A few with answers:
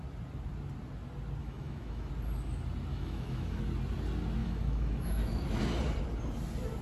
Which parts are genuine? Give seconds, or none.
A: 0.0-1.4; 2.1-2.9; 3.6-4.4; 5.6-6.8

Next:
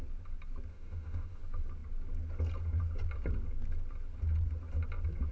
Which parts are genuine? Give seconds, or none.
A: 0.0-0.7; 1.4-5.3

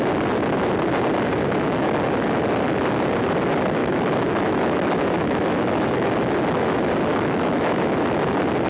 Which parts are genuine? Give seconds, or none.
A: 0.0-3.8; 6.1-7.1; 7.8-8.7

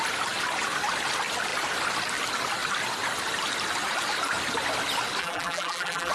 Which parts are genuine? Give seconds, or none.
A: 0.0-5.2

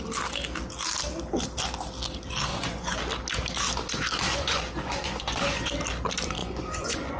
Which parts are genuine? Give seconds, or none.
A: 0.0-2.5; 3.0-4.3; 5.7-6.4

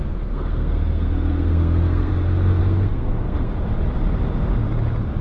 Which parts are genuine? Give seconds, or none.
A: 2.1-2.6; 3.5-5.2

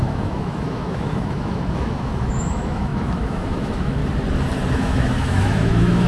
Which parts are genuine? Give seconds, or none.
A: 4.0-4.7

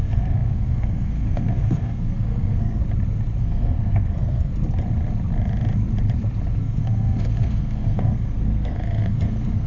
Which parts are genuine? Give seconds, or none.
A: 2.8-3.4; 4.5-6.6